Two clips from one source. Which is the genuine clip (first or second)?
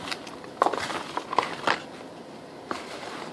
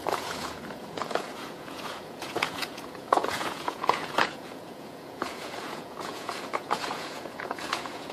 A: first